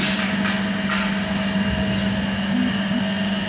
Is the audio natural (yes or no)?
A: yes